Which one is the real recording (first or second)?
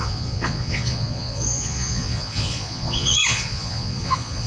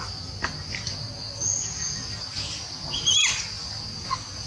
second